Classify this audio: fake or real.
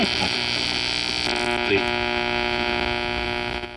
real